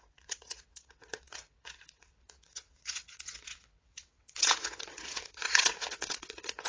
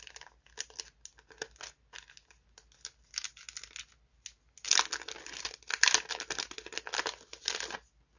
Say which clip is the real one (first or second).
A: second